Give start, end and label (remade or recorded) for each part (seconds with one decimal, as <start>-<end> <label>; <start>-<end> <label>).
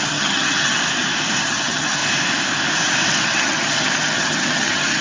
0.0-0.8 remade; 0.8-1.4 recorded; 1.4-2.0 remade; 2.0-3.1 recorded; 3.1-5.0 remade